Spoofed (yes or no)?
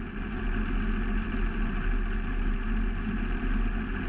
no